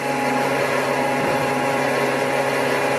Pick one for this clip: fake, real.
real